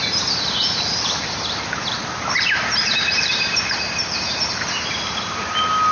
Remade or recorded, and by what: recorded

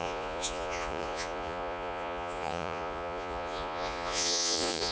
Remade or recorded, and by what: remade, vocoder, Vocos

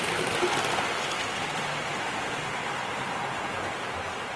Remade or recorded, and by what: recorded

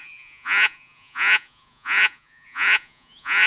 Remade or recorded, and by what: remade, vocoder, Vocos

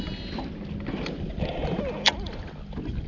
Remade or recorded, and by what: recorded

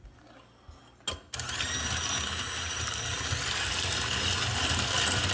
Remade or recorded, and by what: recorded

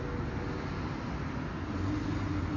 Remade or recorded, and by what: recorded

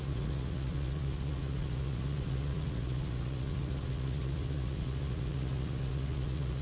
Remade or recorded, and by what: remade, vocoder, Vocos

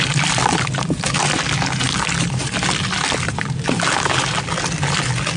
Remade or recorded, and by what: recorded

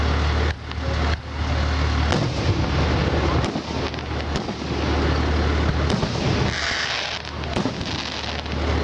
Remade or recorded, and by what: recorded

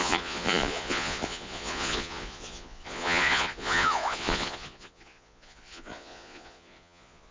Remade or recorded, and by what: remade, vocoder, Vocos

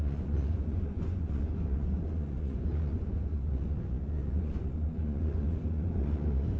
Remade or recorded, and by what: remade, vocoder, Vocos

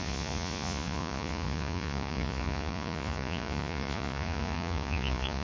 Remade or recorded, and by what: remade, vocoder, Vocos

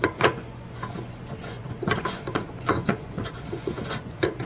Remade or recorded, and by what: remade, vocoder, Vocos